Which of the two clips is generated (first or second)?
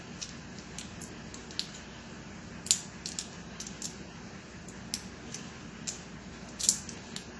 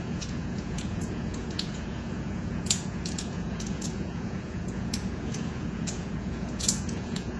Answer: second